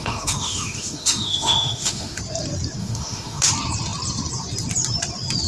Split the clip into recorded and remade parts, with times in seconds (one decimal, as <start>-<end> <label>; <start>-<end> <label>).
0.0-2.2 remade; 2.2-2.8 recorded; 2.8-3.4 remade; 3.4-5.5 recorded